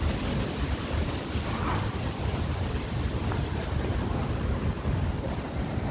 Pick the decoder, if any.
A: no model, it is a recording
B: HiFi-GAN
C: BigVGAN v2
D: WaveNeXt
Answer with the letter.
C